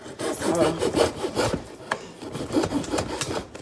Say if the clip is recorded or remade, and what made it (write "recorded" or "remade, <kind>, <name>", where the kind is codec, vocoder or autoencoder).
recorded